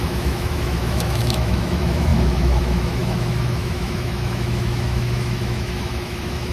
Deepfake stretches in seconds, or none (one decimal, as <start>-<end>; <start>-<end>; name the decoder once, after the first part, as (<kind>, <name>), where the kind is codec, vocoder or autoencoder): 0.0-6.5 (autoencoder, DAC-VAE)